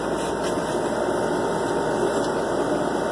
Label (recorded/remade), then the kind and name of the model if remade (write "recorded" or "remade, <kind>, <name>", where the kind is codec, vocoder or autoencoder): recorded